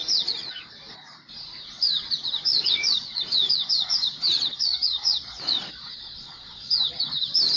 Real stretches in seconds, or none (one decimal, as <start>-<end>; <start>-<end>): none